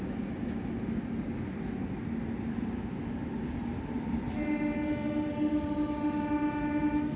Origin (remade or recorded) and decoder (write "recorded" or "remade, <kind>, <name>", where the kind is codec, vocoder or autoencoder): recorded